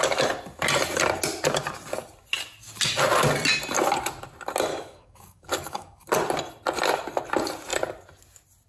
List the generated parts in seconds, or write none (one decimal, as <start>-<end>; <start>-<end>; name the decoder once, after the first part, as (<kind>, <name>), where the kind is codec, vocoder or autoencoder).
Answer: 4.7-6.1 (codec, DAC)